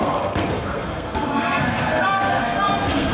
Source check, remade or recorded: remade